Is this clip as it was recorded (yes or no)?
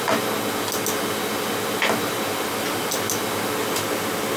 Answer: yes